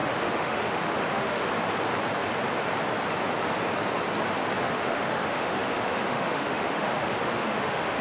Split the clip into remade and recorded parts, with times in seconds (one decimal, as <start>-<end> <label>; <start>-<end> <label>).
0.0-1.5 remade; 1.5-4.6 recorded; 4.6-8.0 remade